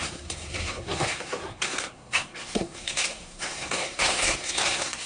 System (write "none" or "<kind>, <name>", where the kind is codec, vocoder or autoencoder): codec, SNAC